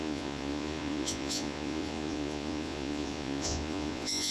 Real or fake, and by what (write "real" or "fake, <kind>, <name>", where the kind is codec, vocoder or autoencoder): fake, vocoder, Vocos